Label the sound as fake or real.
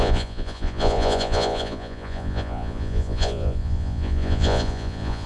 fake